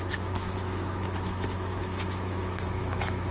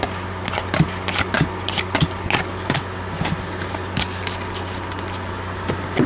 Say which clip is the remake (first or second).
first